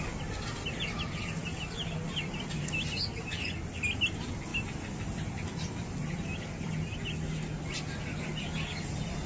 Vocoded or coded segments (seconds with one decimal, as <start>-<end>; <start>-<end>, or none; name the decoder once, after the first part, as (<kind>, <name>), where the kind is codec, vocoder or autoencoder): none

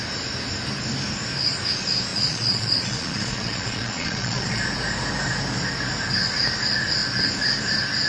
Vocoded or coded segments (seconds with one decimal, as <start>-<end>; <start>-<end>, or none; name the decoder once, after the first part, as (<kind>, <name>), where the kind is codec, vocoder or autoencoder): 2.1-4.6 (vocoder, Vocos)